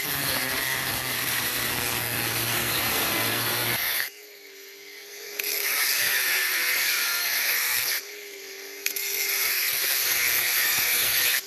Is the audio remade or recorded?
remade